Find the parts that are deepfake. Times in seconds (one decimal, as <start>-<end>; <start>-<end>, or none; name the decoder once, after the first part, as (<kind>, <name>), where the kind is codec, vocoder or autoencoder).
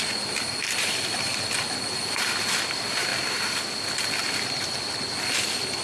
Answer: none